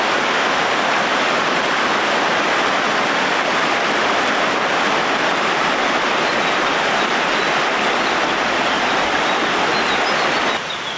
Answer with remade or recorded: recorded